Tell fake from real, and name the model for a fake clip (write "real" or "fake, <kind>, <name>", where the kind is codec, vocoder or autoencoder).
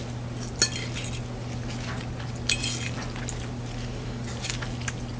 real